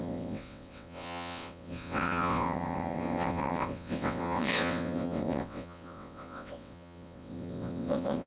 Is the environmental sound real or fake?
fake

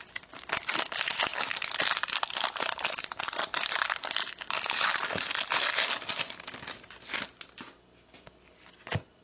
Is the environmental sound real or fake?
real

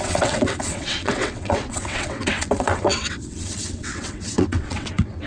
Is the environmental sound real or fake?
fake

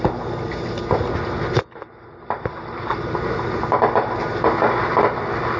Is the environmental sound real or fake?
real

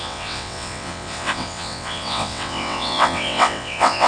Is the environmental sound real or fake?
fake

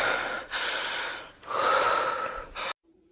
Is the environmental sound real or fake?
real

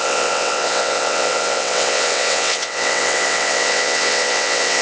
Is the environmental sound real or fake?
fake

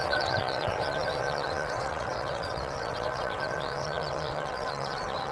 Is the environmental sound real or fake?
fake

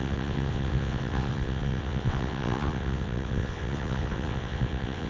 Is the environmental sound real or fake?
fake